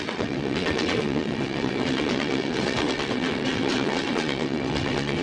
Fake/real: fake